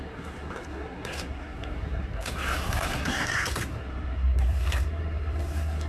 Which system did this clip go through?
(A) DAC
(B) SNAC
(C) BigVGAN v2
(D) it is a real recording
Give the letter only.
B